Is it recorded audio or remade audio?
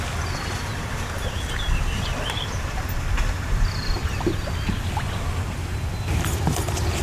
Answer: recorded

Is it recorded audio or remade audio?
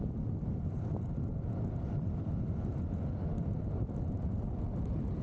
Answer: recorded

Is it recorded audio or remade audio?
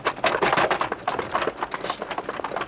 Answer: recorded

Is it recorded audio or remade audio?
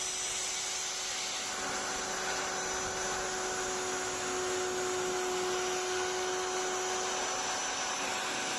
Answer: recorded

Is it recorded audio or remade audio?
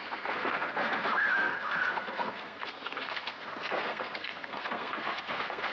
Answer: remade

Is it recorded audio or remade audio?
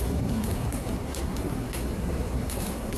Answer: remade